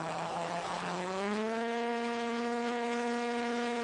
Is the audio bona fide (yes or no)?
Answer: no